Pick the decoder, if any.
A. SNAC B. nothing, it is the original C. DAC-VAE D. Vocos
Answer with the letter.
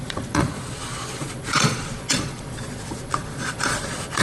D